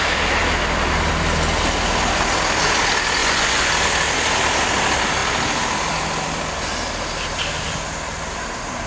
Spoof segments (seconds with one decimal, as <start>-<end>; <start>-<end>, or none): 3.2-3.7